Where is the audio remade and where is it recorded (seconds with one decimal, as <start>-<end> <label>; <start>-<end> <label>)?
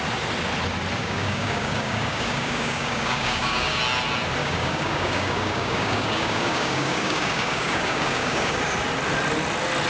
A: 0.0-1.0 recorded; 1.0-3.8 remade; 3.8-4.4 recorded; 4.4-8.6 remade; 8.6-9.9 recorded